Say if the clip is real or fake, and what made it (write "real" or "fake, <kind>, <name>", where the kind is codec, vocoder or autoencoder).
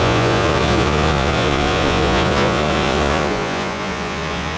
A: fake, vocoder, Vocos